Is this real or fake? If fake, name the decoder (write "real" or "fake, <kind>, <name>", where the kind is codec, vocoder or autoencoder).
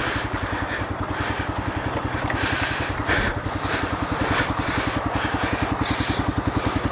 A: real